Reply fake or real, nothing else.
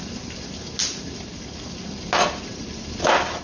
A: real